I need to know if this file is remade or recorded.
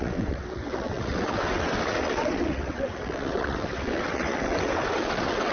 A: remade